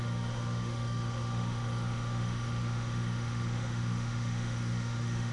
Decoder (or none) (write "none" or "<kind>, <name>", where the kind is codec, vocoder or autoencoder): autoencoder, DAC-VAE